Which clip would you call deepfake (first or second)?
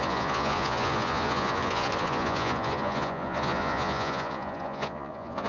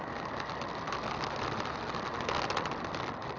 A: first